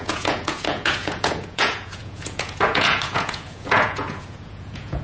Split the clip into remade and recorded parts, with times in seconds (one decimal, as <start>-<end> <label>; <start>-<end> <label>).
0.0-5.0 remade